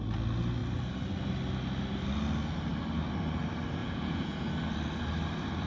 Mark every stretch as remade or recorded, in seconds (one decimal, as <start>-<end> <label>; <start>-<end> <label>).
0.0-3.8 recorded; 3.8-4.5 remade; 4.5-5.7 recorded